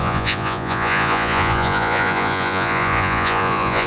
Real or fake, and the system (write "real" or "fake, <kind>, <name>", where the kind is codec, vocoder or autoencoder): fake, vocoder, Vocos